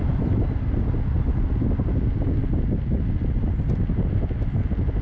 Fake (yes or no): no